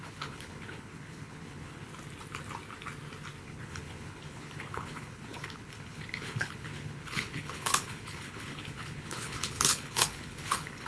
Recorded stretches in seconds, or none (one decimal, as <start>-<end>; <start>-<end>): 1.9-3.4